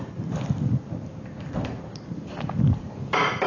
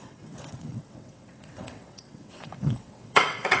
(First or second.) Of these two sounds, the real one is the first